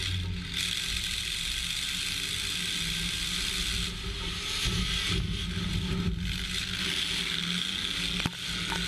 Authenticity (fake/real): real